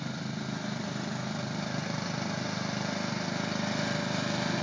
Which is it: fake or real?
real